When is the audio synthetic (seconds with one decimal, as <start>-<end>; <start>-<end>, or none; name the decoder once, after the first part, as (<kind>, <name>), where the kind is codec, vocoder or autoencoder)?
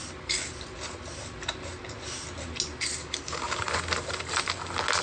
3.0-3.7 (codec, DAC)